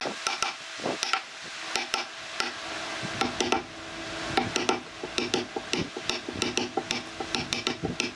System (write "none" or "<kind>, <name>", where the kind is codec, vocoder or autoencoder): none